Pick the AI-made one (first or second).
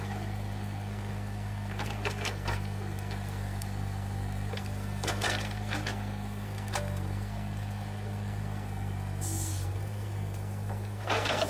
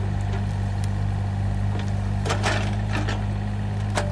first